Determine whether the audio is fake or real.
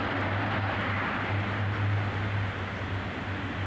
real